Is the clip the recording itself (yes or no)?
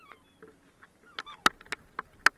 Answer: yes